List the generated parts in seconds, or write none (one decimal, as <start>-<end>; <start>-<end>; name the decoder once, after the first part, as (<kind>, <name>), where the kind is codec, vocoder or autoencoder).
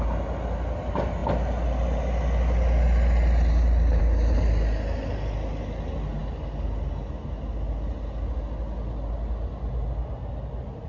none